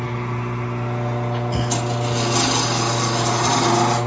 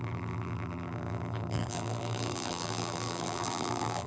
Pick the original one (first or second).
first